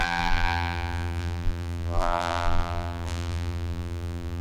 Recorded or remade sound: remade